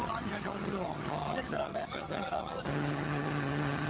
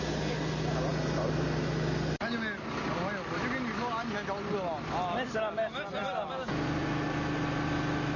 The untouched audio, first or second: second